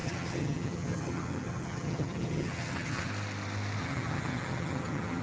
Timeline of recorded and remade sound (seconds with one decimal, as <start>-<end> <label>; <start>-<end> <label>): 0.0-3.1 remade; 3.1-3.8 recorded; 3.8-5.2 remade